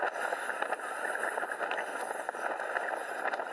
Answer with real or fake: real